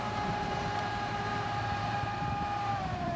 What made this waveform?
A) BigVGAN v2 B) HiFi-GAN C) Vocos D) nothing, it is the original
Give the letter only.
A